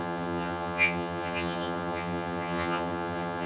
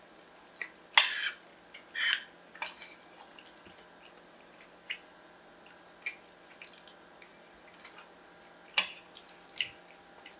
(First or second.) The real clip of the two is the second